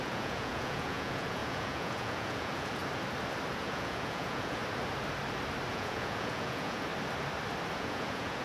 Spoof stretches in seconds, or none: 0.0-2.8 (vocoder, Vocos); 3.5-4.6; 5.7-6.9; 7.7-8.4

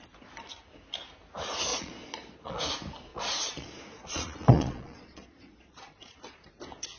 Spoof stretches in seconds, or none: 1.7-2.6 (vocoder, Vocos); 3.1-6.5

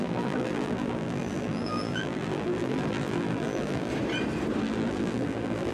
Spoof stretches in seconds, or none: 0.0-3.9 (vocoder, BigVGAN v2); 4.6-5.7

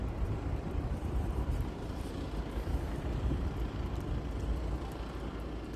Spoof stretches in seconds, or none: 0.0-3.5 (vocoder, BigVGAN v2)

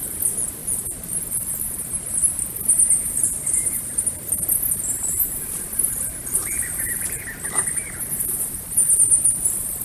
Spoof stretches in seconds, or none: none

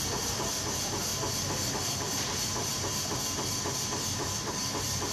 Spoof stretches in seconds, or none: 0.0-1.1 (vocoder, BigVGAN v2); 1.7-2.7; 3.8-5.1

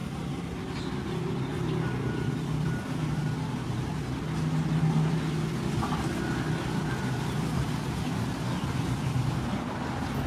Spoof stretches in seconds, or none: 1.3-4.0 (vocoder, BigVGAN v2); 6.5-10.3

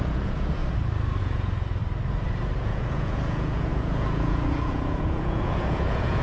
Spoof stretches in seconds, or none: 0.0-0.6 (vocoder, Vocos); 1.2-1.8; 2.6-6.2